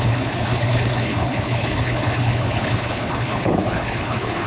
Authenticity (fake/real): fake